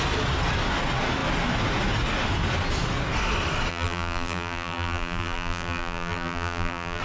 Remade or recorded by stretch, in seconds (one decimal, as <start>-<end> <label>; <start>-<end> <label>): 0.0-3.7 recorded; 3.7-7.0 remade